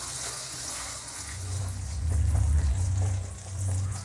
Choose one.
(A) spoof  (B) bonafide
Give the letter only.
A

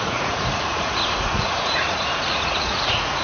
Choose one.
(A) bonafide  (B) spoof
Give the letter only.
B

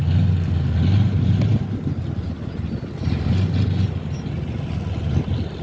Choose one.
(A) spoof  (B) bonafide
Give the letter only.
B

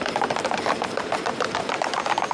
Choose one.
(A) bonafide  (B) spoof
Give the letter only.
A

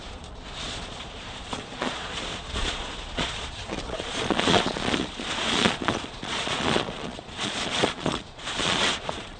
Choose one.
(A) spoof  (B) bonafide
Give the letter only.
A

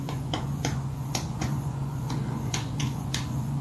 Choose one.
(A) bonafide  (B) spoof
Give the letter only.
B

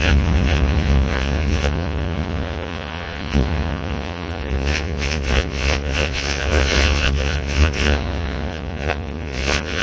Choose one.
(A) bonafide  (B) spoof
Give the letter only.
B